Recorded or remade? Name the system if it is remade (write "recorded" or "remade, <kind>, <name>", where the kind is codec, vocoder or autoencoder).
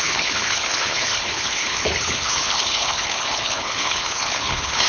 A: remade, codec, HILCodec